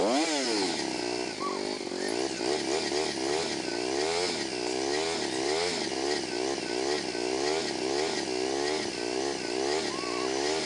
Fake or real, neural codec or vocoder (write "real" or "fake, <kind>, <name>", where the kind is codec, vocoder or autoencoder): real